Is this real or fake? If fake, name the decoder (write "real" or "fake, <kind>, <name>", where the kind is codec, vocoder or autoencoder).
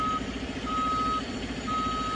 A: real